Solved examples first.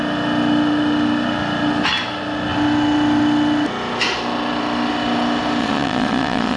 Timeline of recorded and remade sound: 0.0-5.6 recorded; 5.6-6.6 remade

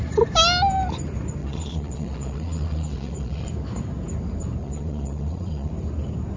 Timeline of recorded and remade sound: 0.0-1.4 recorded; 1.4-3.5 remade; 3.5-4.6 recorded; 4.6-5.7 remade; 5.7-6.4 recorded

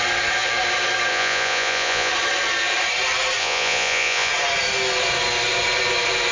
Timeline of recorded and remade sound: 0.0-1.1 recorded; 1.1-2.1 remade; 2.1-3.4 recorded; 3.4-4.3 remade; 4.3-6.3 recorded

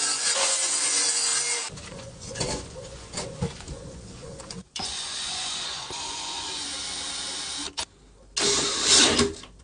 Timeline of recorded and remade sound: 0.0-1.3 remade; 1.3-1.9 recorded; 1.9-6.7 remade; 6.7-9.6 recorded

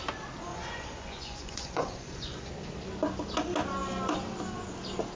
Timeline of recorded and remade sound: 0.0-0.5 recorded; 0.5-2.5 remade; 2.5-5.2 recorded